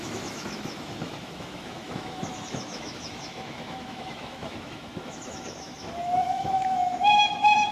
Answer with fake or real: fake